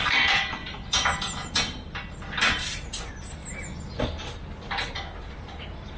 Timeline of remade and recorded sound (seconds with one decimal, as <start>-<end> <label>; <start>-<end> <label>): 0.0-0.6 remade; 0.6-2.4 recorded; 2.4-3.4 remade; 3.4-5.2 recorded; 5.2-6.0 remade